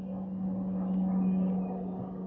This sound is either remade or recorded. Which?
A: recorded